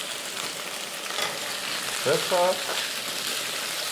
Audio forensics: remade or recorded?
recorded